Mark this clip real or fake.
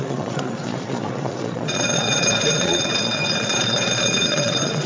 fake